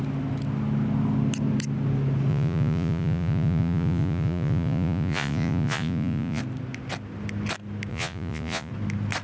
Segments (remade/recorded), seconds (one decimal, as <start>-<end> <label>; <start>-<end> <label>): 0.0-2.3 recorded; 2.3-6.4 remade; 6.4-7.9 recorded; 7.9-8.7 remade; 8.7-9.2 recorded